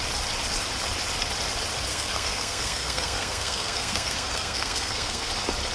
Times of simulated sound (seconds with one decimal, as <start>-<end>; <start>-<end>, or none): 1.9-5.3